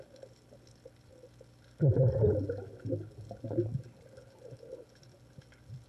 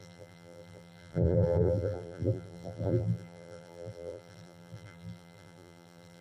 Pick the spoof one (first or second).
second